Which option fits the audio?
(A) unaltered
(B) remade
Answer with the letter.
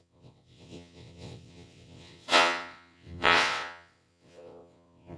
B